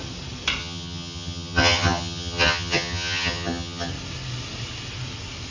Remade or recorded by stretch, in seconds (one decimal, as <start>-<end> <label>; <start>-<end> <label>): 0.0-0.6 recorded; 0.6-3.9 remade; 3.9-5.5 recorded